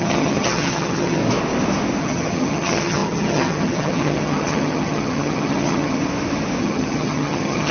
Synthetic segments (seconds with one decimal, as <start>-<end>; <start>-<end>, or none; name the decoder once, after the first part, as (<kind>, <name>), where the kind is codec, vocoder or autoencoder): 0.0-1.2 (vocoder, HiFi-GAN); 2.0-6.0; 6.6-7.7